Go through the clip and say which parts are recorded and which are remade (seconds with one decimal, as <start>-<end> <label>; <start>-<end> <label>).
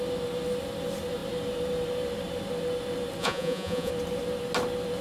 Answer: 0.0-3.2 recorded; 3.2-3.9 remade; 3.9-5.0 recorded